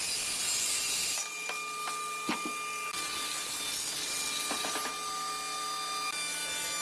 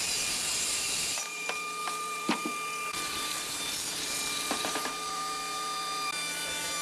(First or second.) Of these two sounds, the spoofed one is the second